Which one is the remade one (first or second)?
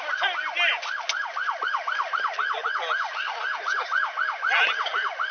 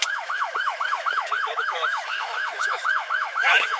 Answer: second